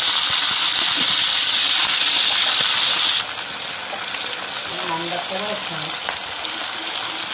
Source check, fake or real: real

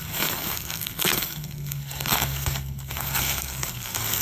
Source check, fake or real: fake